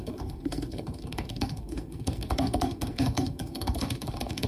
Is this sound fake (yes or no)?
yes